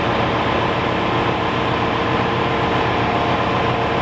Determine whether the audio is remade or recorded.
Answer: recorded